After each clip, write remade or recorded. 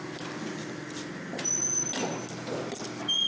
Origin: recorded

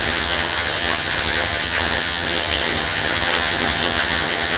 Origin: remade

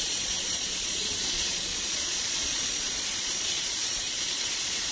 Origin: remade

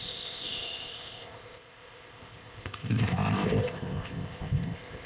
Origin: remade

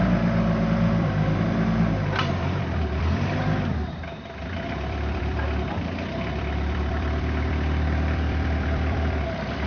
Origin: remade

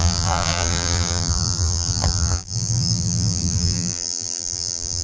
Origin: remade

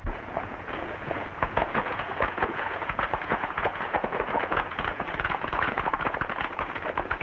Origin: remade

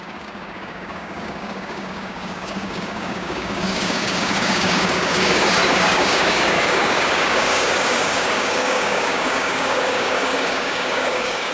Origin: remade